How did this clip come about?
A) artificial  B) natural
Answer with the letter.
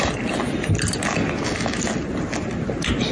B